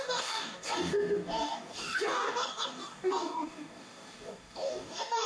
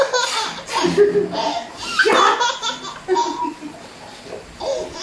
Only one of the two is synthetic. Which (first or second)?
first